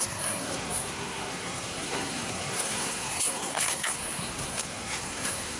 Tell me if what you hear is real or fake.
fake